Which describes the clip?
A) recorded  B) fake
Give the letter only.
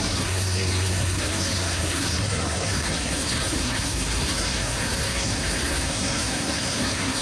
B